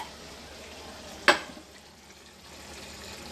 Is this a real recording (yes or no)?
yes